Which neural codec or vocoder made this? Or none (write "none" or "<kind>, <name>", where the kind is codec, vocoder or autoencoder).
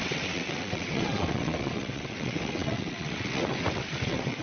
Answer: vocoder, WaveNeXt